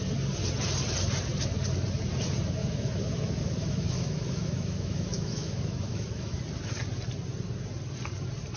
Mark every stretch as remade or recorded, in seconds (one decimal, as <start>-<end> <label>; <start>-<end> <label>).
0.0-2.6 recorded; 2.6-6.4 remade; 6.4-8.6 recorded